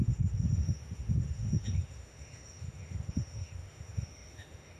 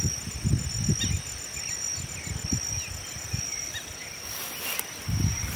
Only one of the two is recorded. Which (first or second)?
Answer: second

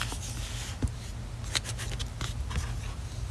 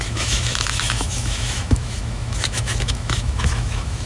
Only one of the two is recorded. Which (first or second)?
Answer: first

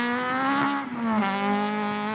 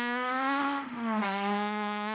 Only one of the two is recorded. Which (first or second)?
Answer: first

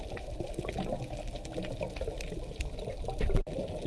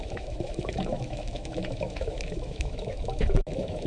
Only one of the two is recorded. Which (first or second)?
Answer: first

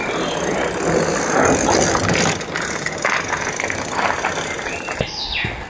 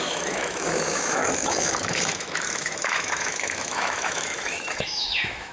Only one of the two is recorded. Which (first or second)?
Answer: first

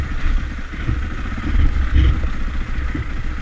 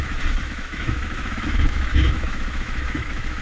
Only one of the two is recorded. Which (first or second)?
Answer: first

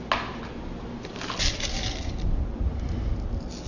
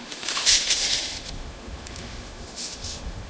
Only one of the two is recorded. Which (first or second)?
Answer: first